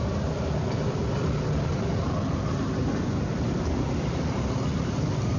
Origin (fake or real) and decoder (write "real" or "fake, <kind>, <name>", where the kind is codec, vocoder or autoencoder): real